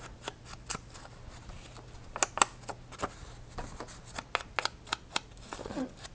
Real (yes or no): yes